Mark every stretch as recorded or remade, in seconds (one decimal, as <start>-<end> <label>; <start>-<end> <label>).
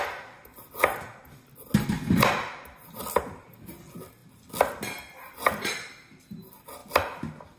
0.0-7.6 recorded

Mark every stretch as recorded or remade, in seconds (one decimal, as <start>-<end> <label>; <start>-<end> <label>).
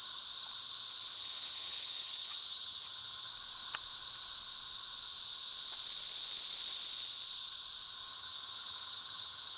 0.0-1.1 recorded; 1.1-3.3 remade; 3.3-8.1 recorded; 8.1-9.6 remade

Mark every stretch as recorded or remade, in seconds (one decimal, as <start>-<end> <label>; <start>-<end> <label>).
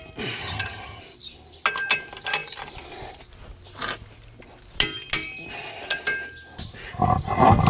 0.0-0.4 recorded; 0.4-1.0 remade; 1.0-7.7 recorded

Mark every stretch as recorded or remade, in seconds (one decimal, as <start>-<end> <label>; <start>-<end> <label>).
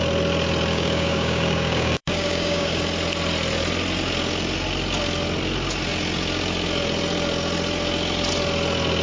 0.0-0.7 recorded; 0.7-2.8 remade; 2.8-9.0 recorded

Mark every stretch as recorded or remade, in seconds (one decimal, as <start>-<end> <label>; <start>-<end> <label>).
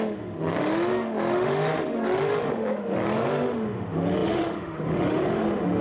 0.0-5.8 remade